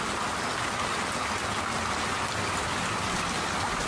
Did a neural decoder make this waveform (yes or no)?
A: no